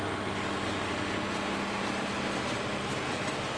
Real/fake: real